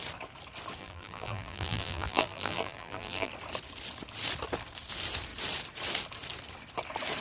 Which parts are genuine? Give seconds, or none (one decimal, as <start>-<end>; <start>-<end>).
0.0-0.8; 3.3-7.2